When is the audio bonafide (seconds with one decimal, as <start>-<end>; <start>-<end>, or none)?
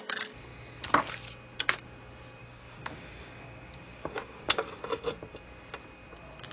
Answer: 0.0-2.4; 4.8-6.5